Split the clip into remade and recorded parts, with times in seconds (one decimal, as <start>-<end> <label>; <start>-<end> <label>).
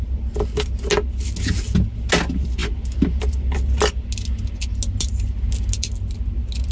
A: 0.0-6.7 recorded